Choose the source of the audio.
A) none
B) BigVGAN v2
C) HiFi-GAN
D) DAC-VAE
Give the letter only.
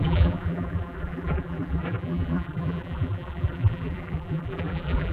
B